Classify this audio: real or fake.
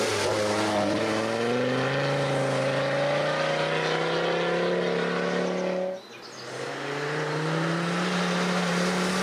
real